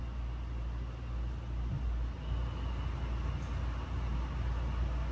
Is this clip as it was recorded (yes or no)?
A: yes